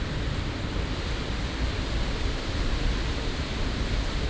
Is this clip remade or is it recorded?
remade